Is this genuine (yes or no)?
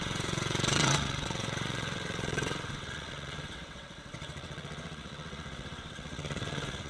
no